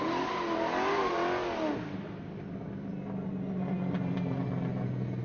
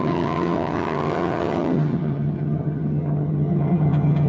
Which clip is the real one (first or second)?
first